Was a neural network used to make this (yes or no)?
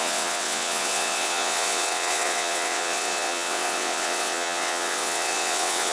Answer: yes